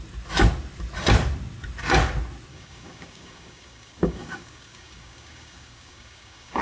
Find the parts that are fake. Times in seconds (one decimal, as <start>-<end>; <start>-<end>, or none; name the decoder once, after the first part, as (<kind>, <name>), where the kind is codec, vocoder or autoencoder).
2.5-6.6 (codec, DAC)